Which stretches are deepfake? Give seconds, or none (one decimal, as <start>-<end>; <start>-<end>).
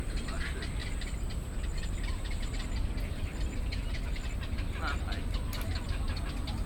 0.8-4.8